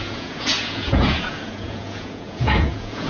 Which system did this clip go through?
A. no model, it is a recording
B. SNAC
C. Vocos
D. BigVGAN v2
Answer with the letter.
C